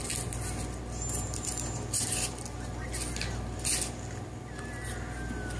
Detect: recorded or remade recorded